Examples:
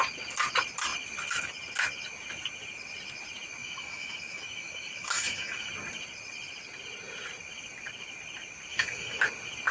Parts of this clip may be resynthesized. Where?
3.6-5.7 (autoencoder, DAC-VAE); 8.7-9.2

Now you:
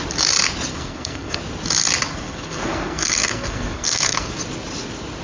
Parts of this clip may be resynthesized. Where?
0.7-1.4 (codec, SNAC); 2.1-4.3

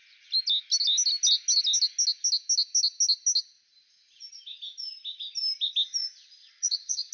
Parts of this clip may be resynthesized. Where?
5.9-7.1 (vocoder, BigVGAN v2)

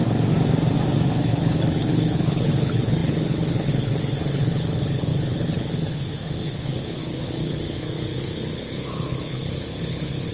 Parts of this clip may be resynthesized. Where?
1.1-10.3 (codec, HILCodec)

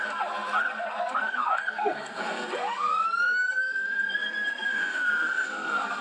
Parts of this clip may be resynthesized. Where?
0.0-6.0 (codec, SNAC)

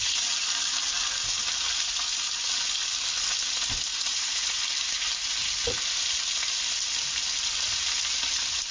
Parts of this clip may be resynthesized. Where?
3.9-4.6 (vocoder, Vocos)